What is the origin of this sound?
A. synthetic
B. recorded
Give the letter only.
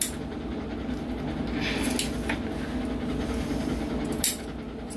B